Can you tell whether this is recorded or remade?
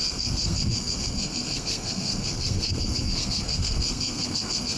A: remade